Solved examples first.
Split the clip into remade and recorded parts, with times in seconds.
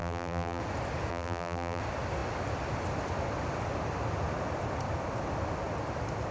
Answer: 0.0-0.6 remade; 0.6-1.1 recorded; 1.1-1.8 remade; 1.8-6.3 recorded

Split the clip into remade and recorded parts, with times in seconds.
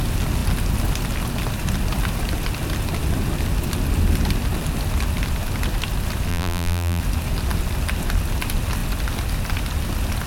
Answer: 0.0-6.3 recorded; 6.3-7.0 remade; 7.0-10.3 recorded